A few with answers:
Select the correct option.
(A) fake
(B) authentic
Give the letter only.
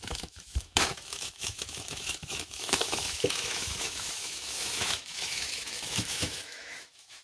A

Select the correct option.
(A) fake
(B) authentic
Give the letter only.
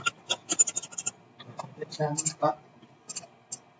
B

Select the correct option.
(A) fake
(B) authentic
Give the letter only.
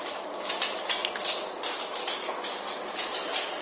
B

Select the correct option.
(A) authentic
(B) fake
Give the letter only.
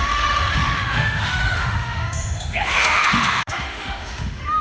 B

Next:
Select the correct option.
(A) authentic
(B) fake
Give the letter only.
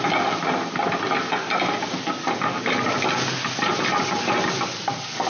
A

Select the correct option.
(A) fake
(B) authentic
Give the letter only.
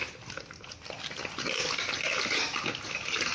B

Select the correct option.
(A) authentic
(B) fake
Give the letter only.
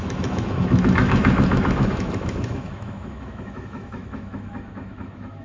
B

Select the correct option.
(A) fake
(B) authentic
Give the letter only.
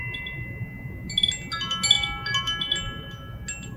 B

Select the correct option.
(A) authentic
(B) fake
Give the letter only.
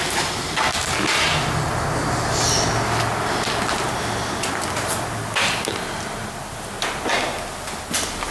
A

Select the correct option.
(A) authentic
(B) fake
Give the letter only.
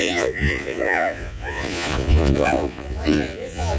B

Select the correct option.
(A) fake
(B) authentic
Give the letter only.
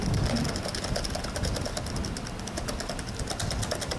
B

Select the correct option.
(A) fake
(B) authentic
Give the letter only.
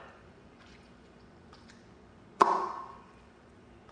A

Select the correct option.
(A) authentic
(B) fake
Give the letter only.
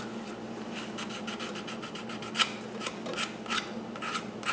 A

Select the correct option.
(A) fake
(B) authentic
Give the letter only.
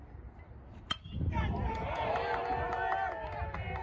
B